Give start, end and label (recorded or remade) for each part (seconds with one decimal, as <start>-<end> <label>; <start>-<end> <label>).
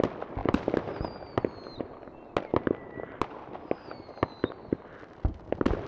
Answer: 0.0-5.9 recorded